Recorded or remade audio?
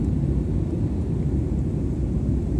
recorded